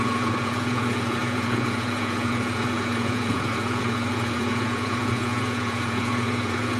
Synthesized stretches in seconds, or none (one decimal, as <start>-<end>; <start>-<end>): 0.0-6.8